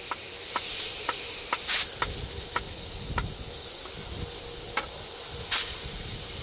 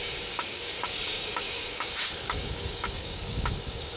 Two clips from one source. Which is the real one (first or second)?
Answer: first